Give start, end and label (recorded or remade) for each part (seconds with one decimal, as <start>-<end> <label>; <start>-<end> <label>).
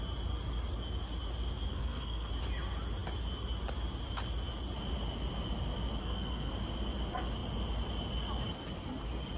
0.0-1.7 recorded; 1.7-2.3 remade; 2.3-6.0 recorded; 6.0-6.5 remade; 6.5-9.4 recorded